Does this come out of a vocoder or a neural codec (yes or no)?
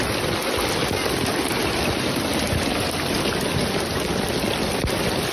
no